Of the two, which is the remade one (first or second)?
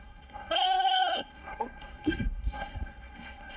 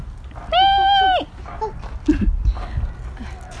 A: first